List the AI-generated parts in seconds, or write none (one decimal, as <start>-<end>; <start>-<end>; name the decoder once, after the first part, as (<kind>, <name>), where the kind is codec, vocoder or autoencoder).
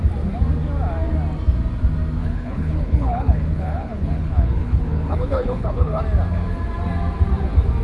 2.2-6.0 (codec, HILCodec)